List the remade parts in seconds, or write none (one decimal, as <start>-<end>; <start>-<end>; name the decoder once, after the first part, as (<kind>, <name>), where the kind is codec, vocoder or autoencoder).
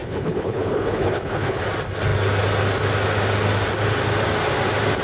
0.0-1.6 (codec, HILCodec)